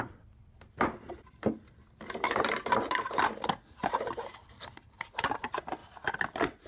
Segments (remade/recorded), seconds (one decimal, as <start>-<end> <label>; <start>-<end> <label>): 0.0-6.7 recorded